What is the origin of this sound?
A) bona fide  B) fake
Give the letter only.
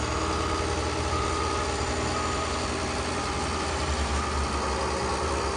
A